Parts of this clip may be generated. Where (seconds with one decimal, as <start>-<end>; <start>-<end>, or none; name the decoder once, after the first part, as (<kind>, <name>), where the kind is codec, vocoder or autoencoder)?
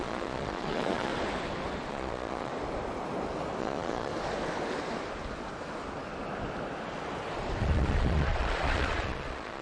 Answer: 0.0-1.1 (vocoder, Vocos); 1.9-2.5; 3.6-4.1; 7.6-9.6